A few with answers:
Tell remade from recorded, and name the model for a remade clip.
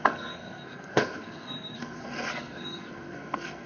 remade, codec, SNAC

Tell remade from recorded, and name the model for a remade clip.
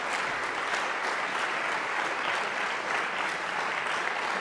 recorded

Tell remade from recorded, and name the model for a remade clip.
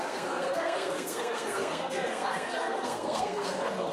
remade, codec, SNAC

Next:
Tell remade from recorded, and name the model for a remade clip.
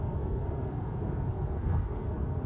remade, codec, SNAC